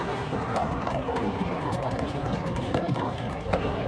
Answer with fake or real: fake